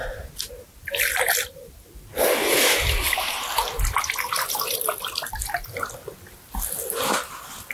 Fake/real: real